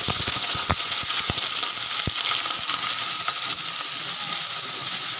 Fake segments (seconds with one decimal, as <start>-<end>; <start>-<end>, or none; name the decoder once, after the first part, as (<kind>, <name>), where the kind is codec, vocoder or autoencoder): 0.0-1.4 (vocoder, Vocos); 4.5-5.2